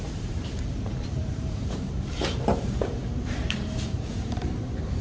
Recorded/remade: remade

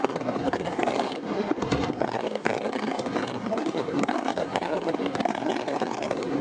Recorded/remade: remade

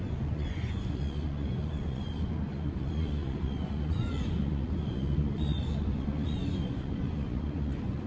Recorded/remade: remade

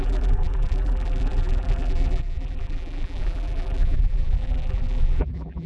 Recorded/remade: remade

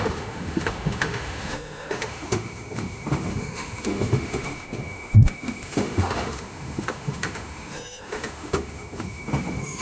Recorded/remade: remade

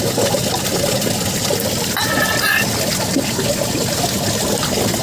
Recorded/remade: recorded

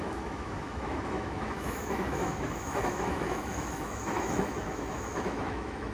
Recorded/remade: remade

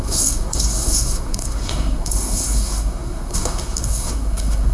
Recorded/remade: remade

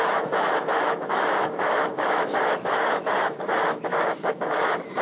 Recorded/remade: remade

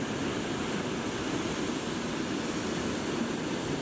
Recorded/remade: recorded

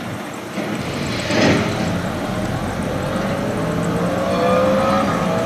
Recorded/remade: recorded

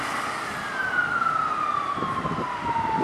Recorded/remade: recorded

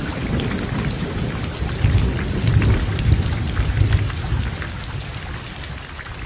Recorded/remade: recorded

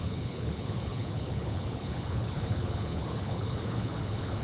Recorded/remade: remade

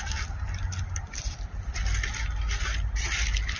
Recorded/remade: recorded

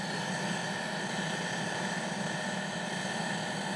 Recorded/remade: recorded